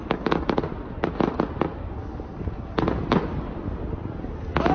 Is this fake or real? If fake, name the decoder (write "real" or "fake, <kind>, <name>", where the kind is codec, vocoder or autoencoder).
real